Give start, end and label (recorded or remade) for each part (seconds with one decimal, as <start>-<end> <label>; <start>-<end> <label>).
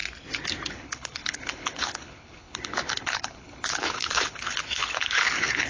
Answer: 0.0-0.7 recorded; 0.7-5.7 remade